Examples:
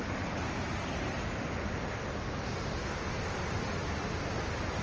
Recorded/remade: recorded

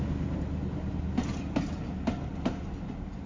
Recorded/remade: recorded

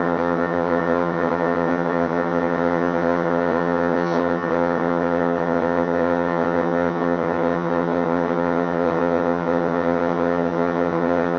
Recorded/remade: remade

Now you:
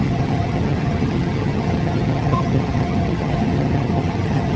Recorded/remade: remade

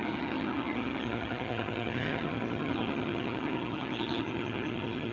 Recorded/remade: remade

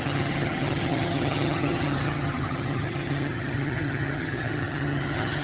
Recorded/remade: remade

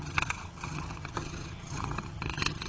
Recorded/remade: remade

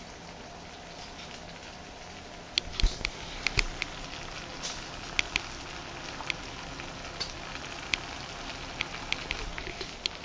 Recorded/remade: recorded